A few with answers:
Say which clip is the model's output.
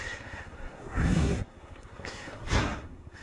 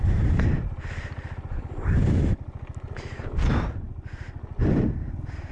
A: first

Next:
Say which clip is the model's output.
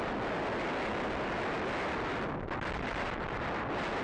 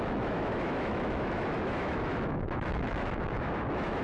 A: second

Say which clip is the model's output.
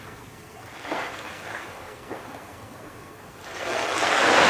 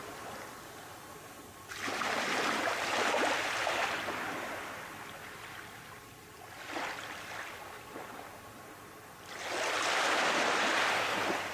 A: first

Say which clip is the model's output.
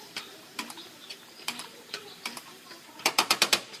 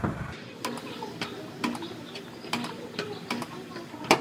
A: first